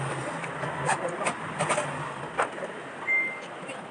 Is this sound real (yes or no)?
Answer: yes